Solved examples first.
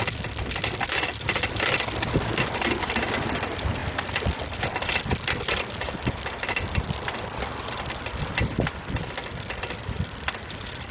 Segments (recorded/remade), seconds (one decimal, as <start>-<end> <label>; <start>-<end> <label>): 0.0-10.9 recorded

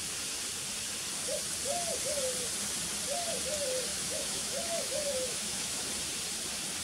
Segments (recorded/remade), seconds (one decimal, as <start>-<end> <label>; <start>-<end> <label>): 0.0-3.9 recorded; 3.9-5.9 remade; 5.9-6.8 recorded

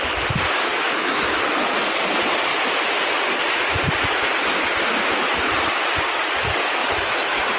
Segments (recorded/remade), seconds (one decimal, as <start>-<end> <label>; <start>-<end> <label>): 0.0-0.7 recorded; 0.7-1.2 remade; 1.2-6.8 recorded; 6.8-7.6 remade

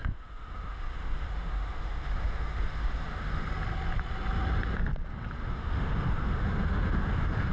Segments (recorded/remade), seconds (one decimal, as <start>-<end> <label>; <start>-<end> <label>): 0.0-3.5 remade; 3.5-5.4 recorded; 5.4-7.5 remade

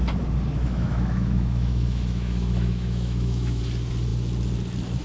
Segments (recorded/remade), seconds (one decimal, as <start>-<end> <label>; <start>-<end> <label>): 0.0-0.6 recorded; 0.6-3.6 remade; 3.6-5.0 recorded